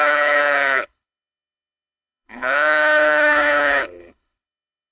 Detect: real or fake fake